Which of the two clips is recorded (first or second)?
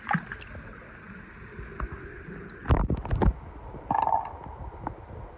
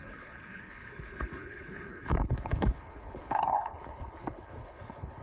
first